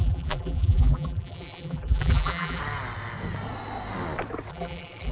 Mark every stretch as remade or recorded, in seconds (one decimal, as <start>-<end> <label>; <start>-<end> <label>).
0.0-2.6 remade; 2.6-4.5 recorded; 4.5-5.1 remade